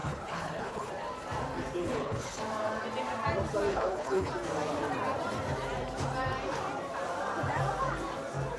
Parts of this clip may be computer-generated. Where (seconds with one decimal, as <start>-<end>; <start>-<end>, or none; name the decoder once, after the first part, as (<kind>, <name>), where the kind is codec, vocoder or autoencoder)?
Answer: 0.0-0.9 (codec, HILCodec); 1.8-2.4; 3.7-4.3